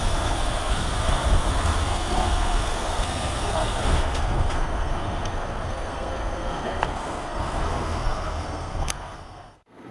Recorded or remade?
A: remade